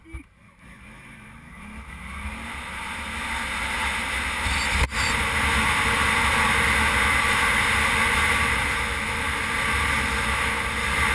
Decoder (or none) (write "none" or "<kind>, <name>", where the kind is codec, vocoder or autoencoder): none